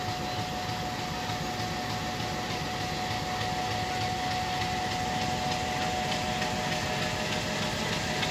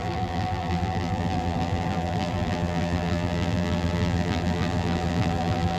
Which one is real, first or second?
first